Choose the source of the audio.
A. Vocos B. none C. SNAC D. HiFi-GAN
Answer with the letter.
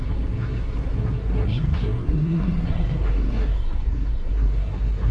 C